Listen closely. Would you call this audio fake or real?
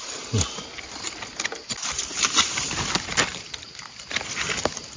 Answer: real